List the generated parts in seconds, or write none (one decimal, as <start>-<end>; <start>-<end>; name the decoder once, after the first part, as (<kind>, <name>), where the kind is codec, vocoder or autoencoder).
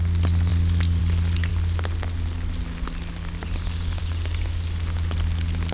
none